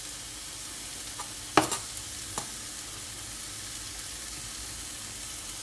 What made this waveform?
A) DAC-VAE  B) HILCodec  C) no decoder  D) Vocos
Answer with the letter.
C